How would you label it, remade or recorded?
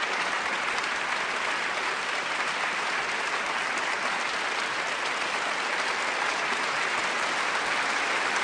recorded